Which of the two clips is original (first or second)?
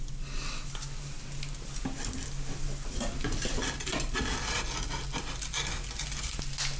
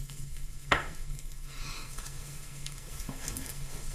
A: first